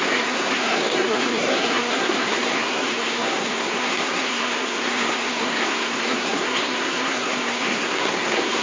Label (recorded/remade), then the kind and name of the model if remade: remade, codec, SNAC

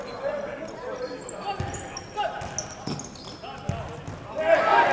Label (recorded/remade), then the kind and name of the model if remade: recorded